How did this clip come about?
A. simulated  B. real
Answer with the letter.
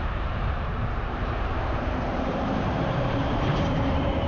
A